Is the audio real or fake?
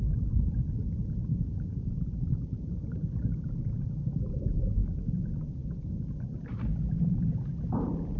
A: real